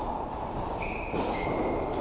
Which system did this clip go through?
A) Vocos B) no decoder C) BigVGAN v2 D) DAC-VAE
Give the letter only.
B